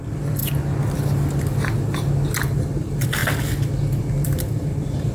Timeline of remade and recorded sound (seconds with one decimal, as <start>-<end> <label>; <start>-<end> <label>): 0.0-0.4 remade; 0.4-2.5 recorded; 2.5-3.2 remade; 3.2-4.0 recorded; 4.0-5.1 remade